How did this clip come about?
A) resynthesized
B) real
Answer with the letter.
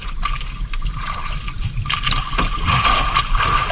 B